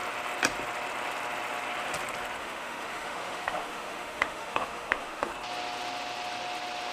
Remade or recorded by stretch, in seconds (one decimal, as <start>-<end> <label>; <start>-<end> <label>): 0.0-2.4 recorded; 2.4-5.3 remade; 5.3-6.9 recorded